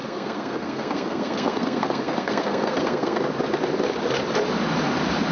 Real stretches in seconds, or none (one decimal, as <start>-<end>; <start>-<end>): 3.2-5.3